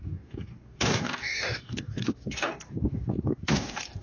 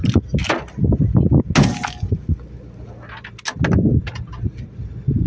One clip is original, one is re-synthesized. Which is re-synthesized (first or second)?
first